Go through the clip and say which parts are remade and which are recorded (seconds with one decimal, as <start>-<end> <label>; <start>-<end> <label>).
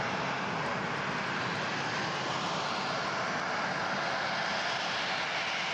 0.0-1.7 recorded; 1.7-2.6 remade; 2.6-5.7 recorded